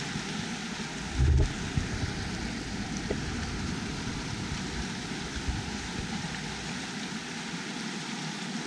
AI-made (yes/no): no